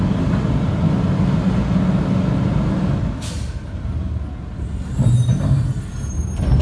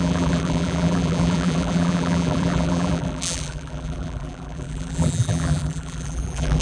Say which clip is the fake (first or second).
second